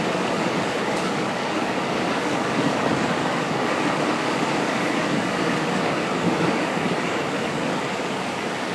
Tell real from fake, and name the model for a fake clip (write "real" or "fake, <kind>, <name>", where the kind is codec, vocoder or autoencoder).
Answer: fake, codec, DAC